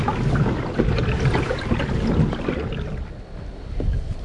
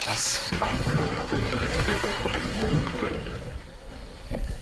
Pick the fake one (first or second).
second